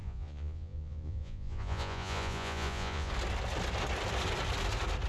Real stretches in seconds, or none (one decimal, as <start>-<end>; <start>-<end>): 3.1-5.1